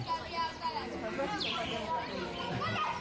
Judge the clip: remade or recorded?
recorded